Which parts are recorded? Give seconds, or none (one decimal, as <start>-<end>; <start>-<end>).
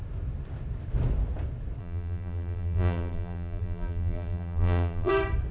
0.0-1.8; 5.1-5.5